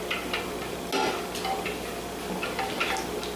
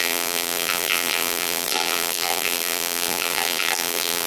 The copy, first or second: second